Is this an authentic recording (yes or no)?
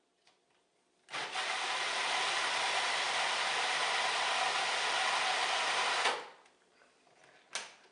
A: yes